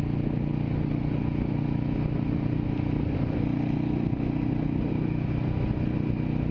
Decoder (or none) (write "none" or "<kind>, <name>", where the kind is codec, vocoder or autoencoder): none